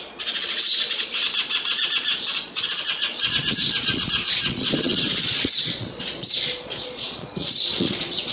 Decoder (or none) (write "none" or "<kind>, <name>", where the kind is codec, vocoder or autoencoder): vocoder, Vocos